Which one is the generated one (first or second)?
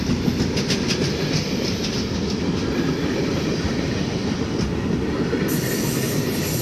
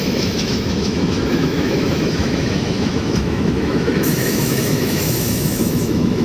second